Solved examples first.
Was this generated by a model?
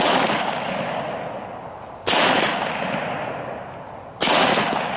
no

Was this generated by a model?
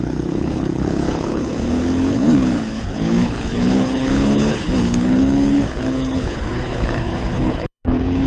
yes